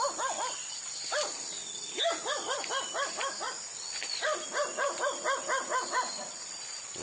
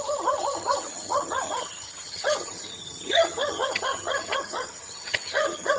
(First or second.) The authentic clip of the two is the first